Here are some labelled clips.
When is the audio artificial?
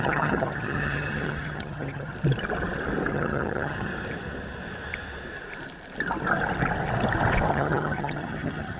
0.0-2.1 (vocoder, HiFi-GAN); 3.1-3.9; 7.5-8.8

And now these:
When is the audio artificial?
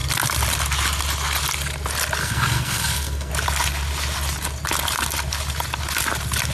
2.2-3.3 (codec, SNAC)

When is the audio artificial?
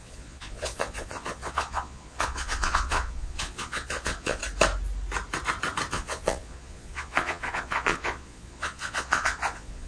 0.0-4.4 (vocoder, Vocos); 5.9-9.9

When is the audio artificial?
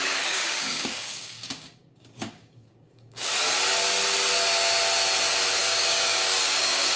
0.0-3.3 (codec, DAC); 5.6-7.0